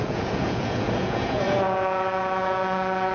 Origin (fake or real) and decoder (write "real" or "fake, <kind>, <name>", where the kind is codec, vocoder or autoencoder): fake, vocoder, Vocos